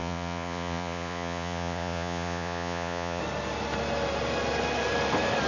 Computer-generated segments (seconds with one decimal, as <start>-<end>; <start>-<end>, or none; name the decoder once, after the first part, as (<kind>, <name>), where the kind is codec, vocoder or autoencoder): 0.0-3.2 (vocoder, Vocos)